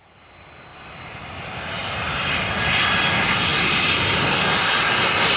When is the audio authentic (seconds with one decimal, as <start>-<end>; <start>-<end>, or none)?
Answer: 0.0-0.7; 1.2-1.8; 2.4-5.4